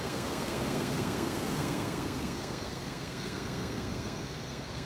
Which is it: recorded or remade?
remade